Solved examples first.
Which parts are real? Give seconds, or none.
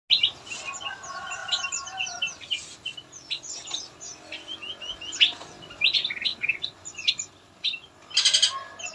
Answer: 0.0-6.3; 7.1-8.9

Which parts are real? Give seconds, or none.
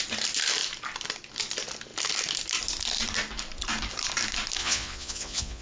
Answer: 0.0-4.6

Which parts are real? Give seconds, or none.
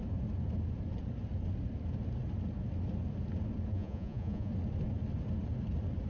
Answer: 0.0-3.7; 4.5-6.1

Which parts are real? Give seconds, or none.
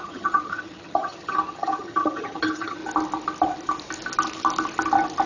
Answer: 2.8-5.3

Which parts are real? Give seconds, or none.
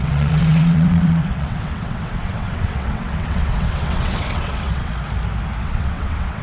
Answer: 4.9-5.6